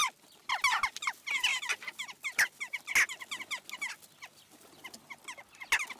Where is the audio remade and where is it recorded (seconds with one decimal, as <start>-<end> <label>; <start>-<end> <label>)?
0.0-1.5 recorded; 1.5-2.9 remade; 2.9-6.0 recorded